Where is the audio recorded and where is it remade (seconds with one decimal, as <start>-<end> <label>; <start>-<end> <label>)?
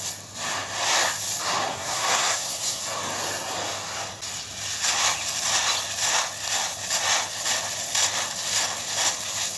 0.0-1.7 recorded; 1.7-2.8 remade; 2.8-9.6 recorded